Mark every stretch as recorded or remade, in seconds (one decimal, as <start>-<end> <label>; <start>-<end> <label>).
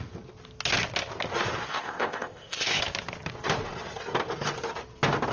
0.0-1.7 recorded; 1.7-2.8 remade; 2.8-5.3 recorded